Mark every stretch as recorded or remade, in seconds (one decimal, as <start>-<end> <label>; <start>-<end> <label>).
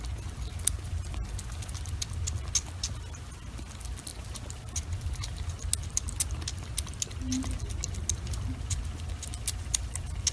0.0-10.3 recorded